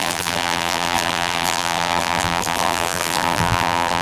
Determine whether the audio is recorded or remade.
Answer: remade